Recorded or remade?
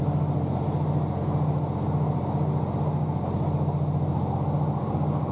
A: recorded